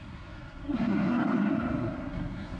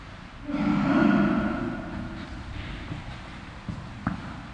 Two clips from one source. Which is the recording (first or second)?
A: second